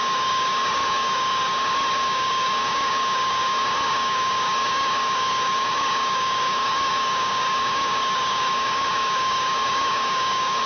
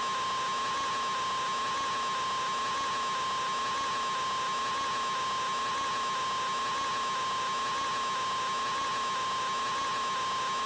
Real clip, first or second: second